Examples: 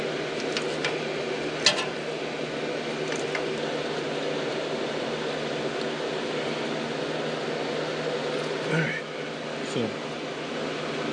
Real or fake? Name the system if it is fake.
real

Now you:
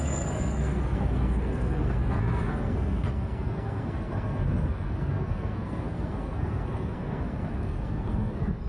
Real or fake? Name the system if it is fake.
fake, codec, SNAC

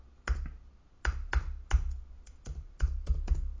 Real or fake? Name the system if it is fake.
real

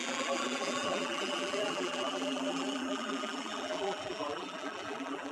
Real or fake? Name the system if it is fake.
fake, vocoder, BigVGAN v2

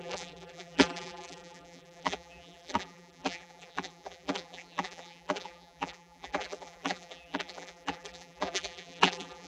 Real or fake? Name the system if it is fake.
fake, vocoder, BigVGAN v2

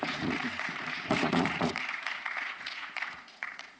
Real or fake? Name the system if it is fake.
fake, vocoder, Vocos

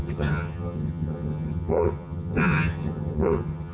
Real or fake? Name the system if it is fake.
fake, vocoder, HiFi-GAN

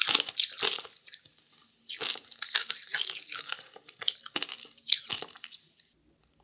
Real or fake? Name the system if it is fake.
real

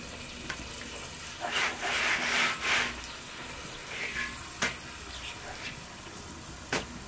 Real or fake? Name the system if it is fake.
real